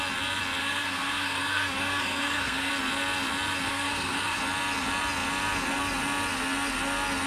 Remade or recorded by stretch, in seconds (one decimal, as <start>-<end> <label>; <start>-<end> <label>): 0.0-0.6 recorded; 0.6-2.7 remade; 2.7-3.7 recorded; 3.7-4.4 remade; 4.4-7.3 recorded